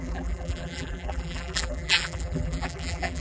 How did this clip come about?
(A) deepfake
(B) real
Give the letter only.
A